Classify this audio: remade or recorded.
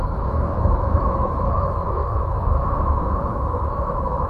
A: remade